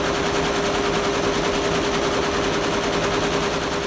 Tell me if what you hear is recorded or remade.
recorded